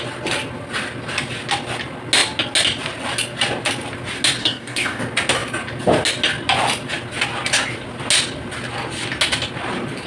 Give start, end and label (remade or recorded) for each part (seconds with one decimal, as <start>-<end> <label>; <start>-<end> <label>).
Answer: 0.0-4.4 recorded; 4.4-5.0 remade; 5.0-10.1 recorded